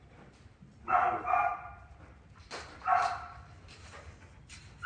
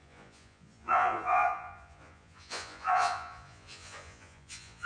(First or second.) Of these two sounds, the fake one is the second